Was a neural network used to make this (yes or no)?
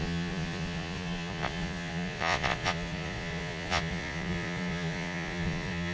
yes